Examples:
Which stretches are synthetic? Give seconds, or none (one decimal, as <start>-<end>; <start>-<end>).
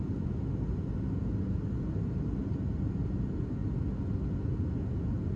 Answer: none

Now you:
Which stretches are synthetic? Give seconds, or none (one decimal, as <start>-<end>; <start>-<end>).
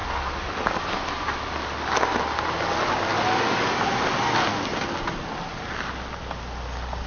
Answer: none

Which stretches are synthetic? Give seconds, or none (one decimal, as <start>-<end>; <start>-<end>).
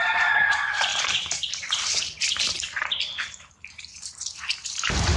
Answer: 0.0-5.2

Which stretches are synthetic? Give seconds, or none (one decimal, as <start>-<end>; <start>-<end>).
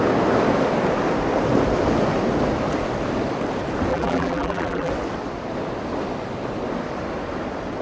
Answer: 3.9-4.9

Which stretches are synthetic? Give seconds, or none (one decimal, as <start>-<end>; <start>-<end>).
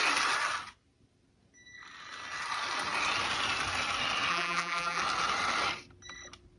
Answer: 4.3-5.0